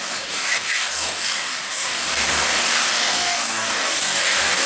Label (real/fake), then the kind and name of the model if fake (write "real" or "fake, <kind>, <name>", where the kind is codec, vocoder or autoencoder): fake, codec, DAC